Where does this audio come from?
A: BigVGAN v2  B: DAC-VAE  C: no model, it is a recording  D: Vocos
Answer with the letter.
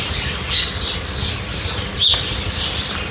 C